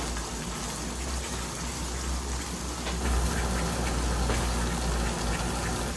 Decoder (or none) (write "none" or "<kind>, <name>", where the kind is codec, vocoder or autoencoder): none